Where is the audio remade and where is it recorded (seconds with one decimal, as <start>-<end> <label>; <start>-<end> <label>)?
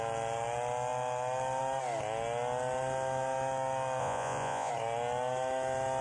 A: 0.0-4.0 recorded; 4.0-4.7 remade; 4.7-6.0 recorded